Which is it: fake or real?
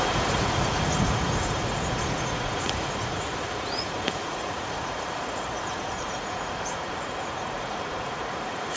fake